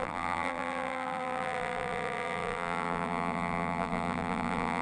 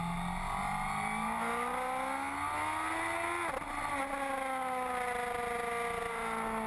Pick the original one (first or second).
second